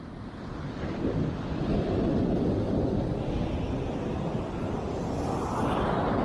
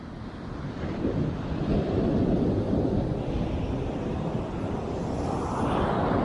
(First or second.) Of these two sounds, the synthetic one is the second